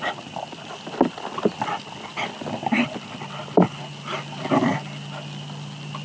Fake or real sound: real